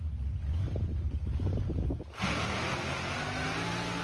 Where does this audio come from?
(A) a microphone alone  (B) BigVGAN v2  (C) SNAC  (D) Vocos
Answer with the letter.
A